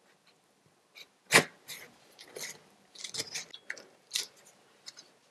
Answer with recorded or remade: recorded